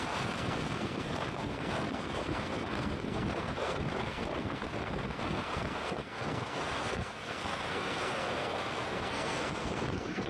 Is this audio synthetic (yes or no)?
yes